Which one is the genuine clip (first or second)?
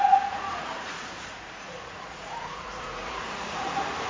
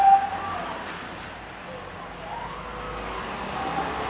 second